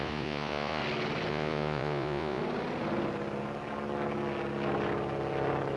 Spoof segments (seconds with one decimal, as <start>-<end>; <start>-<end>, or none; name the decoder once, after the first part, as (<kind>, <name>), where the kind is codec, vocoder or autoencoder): 0.0-0.8 (vocoder, Vocos); 1.3-2.4